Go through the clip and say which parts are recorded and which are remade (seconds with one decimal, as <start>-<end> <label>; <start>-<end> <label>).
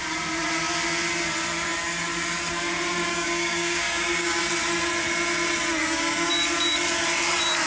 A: 0.0-3.1 recorded; 3.1-4.4 remade; 4.4-5.8 recorded; 5.8-6.3 remade; 6.3-7.7 recorded